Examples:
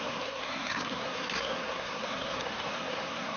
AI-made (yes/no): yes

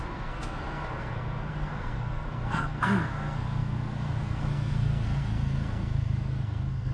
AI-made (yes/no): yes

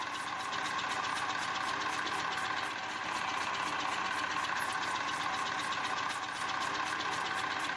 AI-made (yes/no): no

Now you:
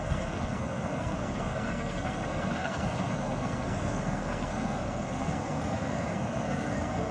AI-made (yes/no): yes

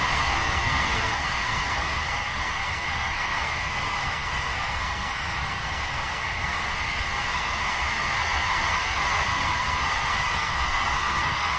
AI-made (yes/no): yes